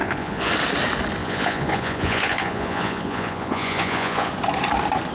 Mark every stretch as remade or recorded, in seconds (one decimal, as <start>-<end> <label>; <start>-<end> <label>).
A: 0.0-0.5 remade; 0.5-1.2 recorded; 1.2-4.3 remade; 4.3-5.1 recorded